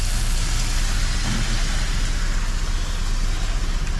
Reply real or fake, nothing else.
real